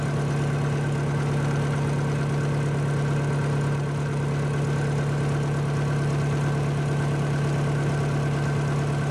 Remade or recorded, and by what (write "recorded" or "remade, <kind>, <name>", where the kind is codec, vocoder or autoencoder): recorded